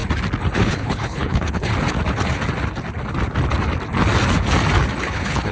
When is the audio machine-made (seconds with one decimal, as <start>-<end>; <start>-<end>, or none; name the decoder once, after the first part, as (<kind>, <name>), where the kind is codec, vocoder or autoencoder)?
0.6-1.7 (codec, HILCodec); 5.0-5.5